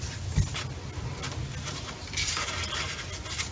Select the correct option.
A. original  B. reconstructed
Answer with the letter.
A